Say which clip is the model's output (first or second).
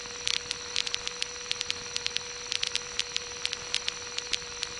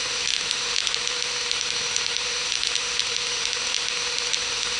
second